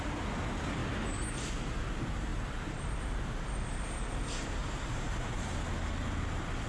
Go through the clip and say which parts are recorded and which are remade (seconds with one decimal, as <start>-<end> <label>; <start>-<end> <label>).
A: 0.0-2.3 recorded; 2.3-2.9 remade; 2.9-4.6 recorded; 4.6-5.6 remade; 5.6-6.7 recorded